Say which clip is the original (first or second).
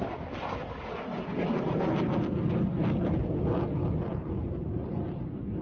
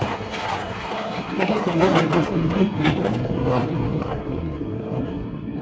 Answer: first